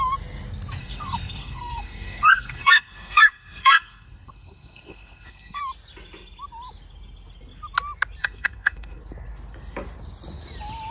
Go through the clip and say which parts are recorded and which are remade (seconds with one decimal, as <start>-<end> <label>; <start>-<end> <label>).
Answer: 0.0-0.8 recorded; 0.8-5.6 remade; 5.6-8.2 recorded; 8.2-9.0 remade; 9.0-10.9 recorded